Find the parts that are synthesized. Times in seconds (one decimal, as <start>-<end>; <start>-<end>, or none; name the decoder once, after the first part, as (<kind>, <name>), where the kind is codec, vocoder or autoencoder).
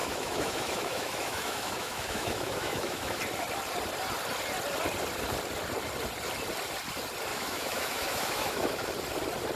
0.0-3.2 (autoencoder, DAC-VAE); 7.3-8.9